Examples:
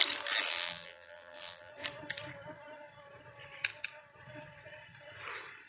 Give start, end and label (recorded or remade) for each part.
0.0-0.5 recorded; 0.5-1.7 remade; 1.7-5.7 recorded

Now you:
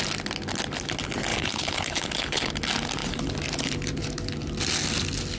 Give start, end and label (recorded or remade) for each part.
0.0-1.3 recorded; 1.3-2.5 remade; 2.5-5.4 recorded

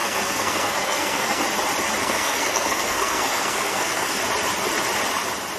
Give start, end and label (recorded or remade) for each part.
0.0-1.4 remade; 1.4-2.0 recorded; 2.0-4.2 remade; 4.2-5.6 recorded